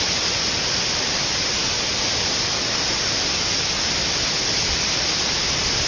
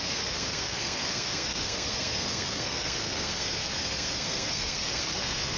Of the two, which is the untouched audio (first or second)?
first